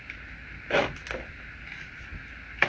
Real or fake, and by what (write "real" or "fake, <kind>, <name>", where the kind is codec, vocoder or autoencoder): real